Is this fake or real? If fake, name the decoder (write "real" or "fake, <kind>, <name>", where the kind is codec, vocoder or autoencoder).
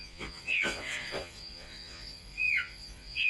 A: fake, vocoder, Vocos